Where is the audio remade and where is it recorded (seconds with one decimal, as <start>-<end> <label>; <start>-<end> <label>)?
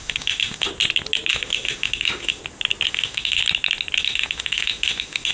0.0-0.7 remade; 0.7-1.3 recorded; 1.3-2.4 remade; 2.4-2.9 recorded; 2.9-3.4 remade; 3.4-4.0 recorded; 4.0-5.3 remade